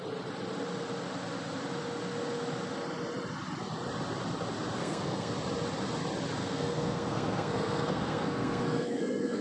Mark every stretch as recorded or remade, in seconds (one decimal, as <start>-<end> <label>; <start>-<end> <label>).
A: 0.0-4.8 recorded; 4.8-5.3 remade; 5.3-6.4 recorded; 6.4-9.4 remade